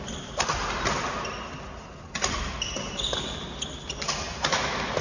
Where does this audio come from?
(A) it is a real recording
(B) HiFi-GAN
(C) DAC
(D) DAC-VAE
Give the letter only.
A